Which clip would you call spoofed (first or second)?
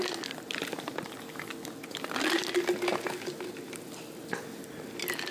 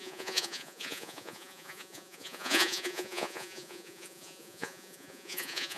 second